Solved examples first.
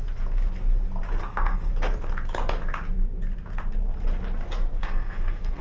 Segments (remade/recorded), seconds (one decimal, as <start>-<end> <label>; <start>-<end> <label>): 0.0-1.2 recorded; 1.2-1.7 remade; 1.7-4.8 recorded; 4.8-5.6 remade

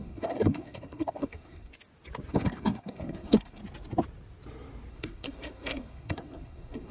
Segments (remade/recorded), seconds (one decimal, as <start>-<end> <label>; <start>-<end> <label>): 0.0-1.7 remade; 1.7-2.3 recorded; 2.3-3.6 remade; 3.6-4.9 recorded; 4.9-6.9 remade

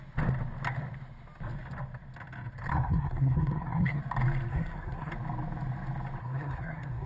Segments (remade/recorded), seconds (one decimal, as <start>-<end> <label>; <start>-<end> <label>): 0.0-2.7 recorded; 2.7-4.0 remade; 4.0-4.5 recorded; 4.5-5.1 remade; 5.1-6.2 recorded; 6.2-7.1 remade

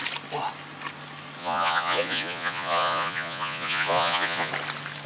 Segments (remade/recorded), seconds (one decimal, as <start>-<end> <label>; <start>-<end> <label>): 0.0-1.4 recorded; 1.4-4.5 remade; 4.5-5.1 recorded

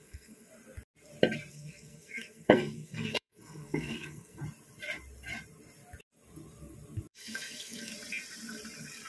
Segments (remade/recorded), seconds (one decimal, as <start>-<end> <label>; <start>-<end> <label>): 0.0-0.5 remade; 0.5-1.5 recorded; 1.5-4.4 remade; 4.4-7.1 recorded; 7.1-7.9 remade; 7.9-9.1 recorded